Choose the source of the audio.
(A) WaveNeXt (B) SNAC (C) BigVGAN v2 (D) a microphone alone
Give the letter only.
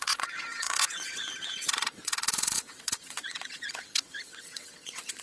A